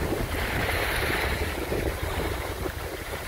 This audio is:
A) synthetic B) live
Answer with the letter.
A